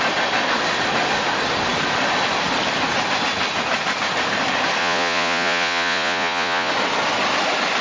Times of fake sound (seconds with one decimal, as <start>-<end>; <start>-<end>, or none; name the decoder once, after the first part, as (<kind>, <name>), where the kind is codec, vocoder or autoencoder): 4.8-6.7 (vocoder, Vocos)